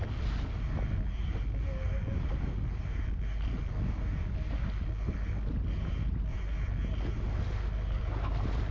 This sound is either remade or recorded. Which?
recorded